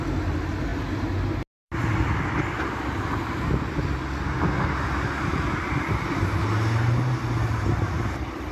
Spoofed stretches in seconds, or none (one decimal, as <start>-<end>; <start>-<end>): none